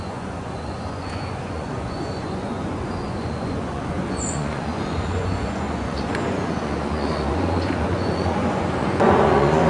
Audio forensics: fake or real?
fake